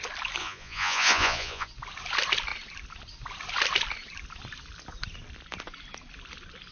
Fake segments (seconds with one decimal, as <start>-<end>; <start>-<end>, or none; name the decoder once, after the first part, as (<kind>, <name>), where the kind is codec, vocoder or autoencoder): 0.4-1.7 (vocoder, Vocos)

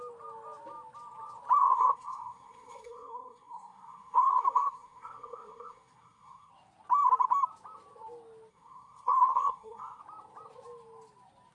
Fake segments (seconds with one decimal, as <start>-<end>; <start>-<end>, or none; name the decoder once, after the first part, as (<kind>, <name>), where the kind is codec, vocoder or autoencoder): 1.6-6.5 (codec, SNAC); 8.5-10.0

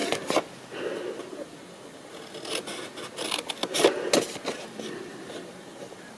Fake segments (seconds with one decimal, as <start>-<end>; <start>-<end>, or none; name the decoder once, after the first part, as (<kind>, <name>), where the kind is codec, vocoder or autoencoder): none

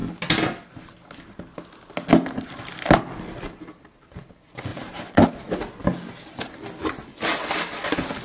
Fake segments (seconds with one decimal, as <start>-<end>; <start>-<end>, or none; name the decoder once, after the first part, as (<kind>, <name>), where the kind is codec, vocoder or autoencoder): 4.7-5.3 (vocoder, BigVGAN v2)

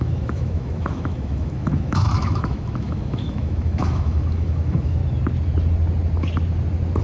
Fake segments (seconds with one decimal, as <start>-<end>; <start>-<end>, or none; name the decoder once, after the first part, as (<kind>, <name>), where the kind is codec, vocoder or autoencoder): 0.0-5.0 (autoencoder, DAC-VAE)

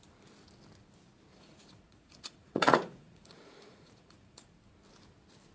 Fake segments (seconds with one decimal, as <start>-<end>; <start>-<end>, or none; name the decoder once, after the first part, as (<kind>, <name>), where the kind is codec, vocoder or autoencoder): 1.3-4.6 (vocoder, Vocos)

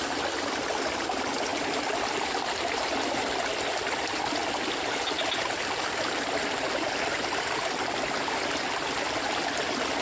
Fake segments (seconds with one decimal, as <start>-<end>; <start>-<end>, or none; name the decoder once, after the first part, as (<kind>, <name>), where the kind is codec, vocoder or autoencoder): none